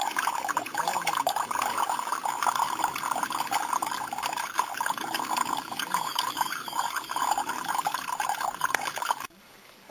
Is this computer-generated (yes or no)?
yes